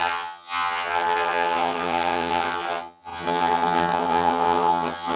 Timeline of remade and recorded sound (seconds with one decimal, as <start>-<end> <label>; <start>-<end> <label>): 0.0-5.2 remade